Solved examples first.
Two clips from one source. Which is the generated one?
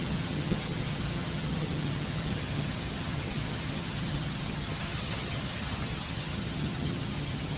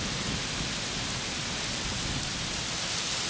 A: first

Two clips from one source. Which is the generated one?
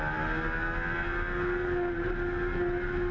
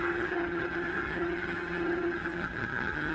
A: second